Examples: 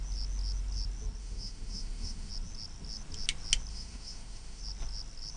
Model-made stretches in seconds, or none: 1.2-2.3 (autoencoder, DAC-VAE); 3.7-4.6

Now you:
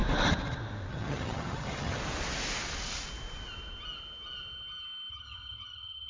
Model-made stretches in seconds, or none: 0.9-2.0 (vocoder, HiFi-GAN); 5.1-6.1